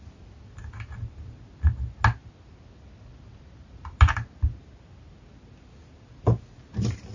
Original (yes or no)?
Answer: yes